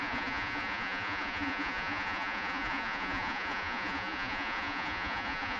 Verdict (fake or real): fake